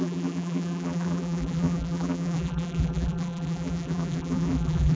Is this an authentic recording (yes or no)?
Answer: no